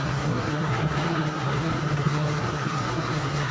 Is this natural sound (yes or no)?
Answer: no